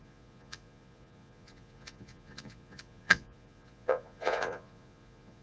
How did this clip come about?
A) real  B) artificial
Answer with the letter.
B